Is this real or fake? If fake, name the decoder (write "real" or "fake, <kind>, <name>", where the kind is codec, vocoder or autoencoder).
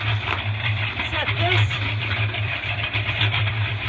fake, vocoder, BigVGAN v2